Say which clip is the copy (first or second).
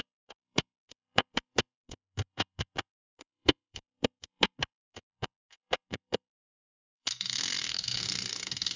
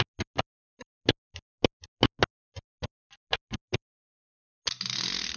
first